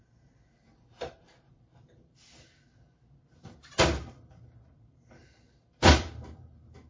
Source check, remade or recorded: remade